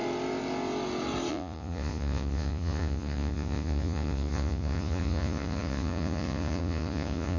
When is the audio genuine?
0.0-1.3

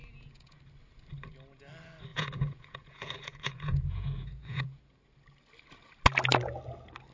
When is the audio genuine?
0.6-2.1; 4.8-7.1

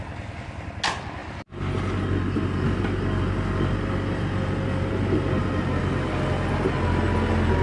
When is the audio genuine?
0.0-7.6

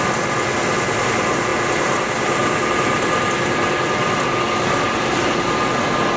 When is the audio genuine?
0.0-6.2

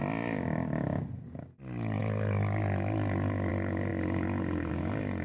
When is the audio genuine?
0.0-5.2

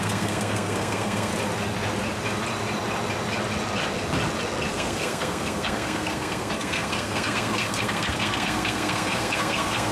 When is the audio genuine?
1.3-4.7

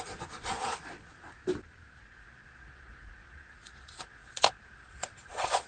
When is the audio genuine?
1.4-2.0